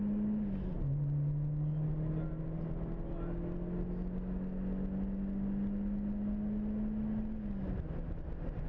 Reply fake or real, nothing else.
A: real